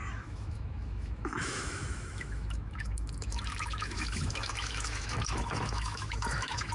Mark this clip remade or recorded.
remade